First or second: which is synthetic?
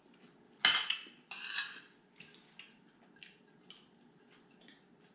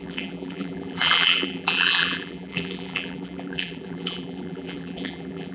second